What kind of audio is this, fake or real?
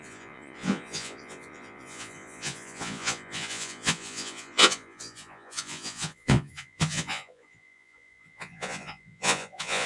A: fake